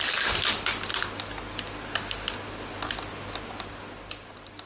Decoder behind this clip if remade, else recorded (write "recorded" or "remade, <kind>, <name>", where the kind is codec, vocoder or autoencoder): recorded